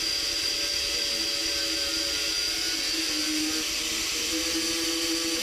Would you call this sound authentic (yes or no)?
yes